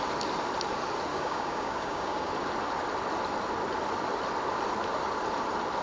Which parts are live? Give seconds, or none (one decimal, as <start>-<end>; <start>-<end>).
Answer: 0.0-1.1; 2.3-5.8